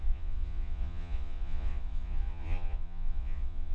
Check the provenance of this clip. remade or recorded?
remade